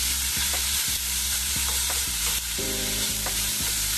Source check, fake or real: fake